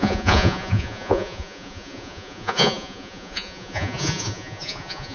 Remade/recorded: remade